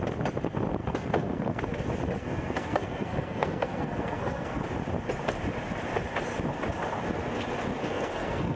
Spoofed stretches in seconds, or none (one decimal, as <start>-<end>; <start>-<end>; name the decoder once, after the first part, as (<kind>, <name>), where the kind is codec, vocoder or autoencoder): 0.8-1.6 (codec, SNAC); 2.2-4.6; 7.8-8.6